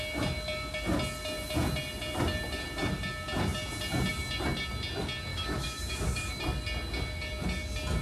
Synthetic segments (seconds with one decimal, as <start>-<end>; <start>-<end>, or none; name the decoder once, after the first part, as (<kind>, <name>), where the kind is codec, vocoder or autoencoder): 5.3-6.4 (autoencoder, DAC-VAE)

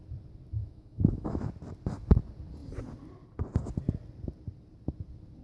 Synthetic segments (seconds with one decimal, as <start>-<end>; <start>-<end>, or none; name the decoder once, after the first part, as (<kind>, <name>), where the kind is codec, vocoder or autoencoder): 0.6-1.5 (autoencoder, DAC-VAE)